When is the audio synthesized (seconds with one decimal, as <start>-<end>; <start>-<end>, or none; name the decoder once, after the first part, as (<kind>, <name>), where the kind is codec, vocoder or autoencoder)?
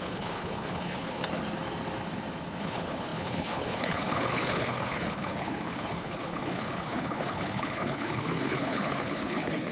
0.0-1.2 (codec, HILCodec); 2.6-9.7